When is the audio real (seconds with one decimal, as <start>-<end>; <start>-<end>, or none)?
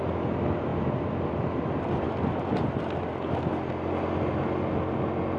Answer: 0.0-5.4